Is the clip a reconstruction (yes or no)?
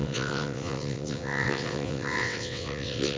yes